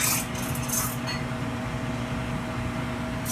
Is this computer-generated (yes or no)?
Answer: no